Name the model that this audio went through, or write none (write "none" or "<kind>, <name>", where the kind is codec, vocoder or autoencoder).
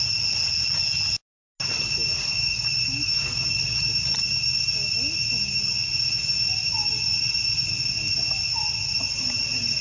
none